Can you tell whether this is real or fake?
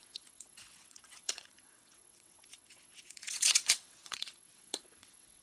fake